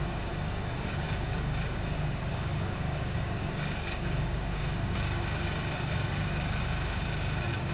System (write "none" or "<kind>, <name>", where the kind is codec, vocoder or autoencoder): codec, DAC